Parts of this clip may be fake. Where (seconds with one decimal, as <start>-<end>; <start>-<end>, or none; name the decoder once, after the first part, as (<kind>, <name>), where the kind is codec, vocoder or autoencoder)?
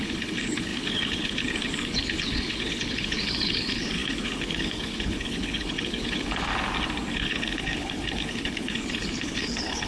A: 0.0-6.5 (codec, HILCodec); 7.1-9.9